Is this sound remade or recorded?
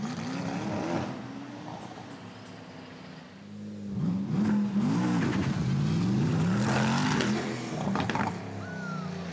recorded